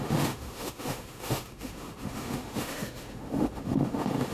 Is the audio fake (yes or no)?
yes